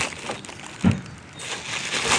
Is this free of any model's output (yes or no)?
yes